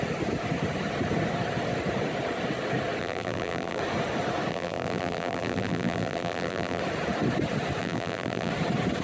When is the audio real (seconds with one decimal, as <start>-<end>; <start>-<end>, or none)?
0.0-3.0; 3.8-4.5; 6.8-7.8; 8.5-9.0